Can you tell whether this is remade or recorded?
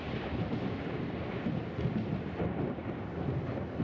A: recorded